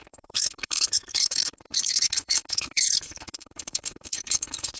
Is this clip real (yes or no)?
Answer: no